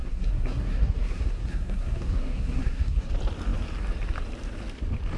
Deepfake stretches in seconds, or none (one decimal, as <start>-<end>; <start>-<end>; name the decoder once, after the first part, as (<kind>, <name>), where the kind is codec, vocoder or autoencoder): 0.0-3.1 (codec, SNAC)